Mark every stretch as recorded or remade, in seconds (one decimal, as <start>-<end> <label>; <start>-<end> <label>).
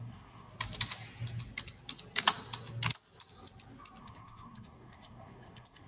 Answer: 0.0-0.5 remade; 0.5-4.0 recorded; 4.0-5.9 remade